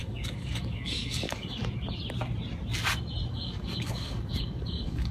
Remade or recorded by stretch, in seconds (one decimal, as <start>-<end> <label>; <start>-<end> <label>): 0.0-1.6 remade; 1.6-3.3 recorded; 3.3-5.1 remade